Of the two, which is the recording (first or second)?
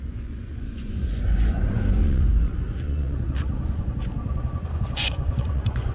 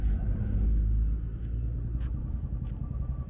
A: second